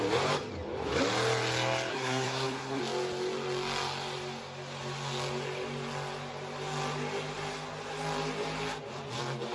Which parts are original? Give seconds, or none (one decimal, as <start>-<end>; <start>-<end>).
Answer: 0.0-1.9; 2.8-9.5